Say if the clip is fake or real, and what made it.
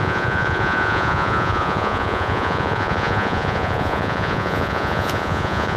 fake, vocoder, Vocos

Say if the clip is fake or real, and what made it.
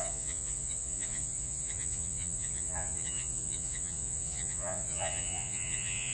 fake, vocoder, Vocos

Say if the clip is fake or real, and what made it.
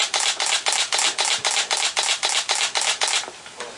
real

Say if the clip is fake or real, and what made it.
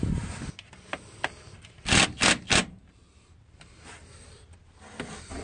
real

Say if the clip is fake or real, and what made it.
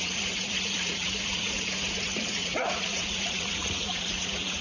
fake, vocoder, Vocos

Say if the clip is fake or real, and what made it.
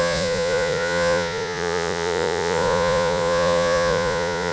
fake, vocoder, Vocos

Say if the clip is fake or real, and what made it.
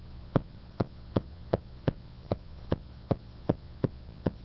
fake, vocoder, Vocos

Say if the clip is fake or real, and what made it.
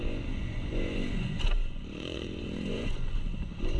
fake, vocoder, Vocos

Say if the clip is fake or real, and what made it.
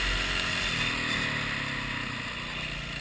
real